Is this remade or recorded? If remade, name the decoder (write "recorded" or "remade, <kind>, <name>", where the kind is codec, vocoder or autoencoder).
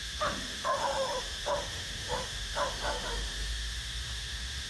remade, autoencoder, DAC-VAE